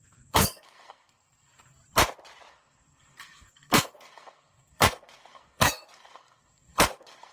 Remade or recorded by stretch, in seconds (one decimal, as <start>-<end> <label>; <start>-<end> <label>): 0.0-1.8 remade; 1.8-2.5 recorded; 2.5-7.3 remade